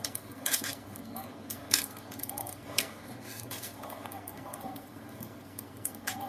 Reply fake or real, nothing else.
fake